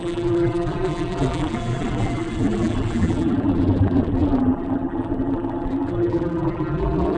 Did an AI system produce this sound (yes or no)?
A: yes